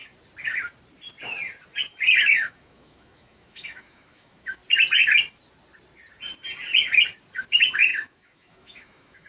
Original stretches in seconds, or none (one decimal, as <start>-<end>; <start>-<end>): 0.0-2.3; 4.6-7.5